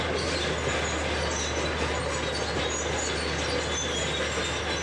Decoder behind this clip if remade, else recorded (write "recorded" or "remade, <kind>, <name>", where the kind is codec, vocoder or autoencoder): recorded